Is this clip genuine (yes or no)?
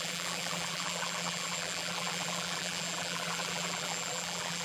no